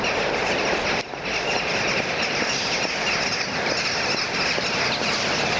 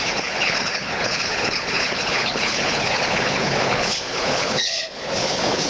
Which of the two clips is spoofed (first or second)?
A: second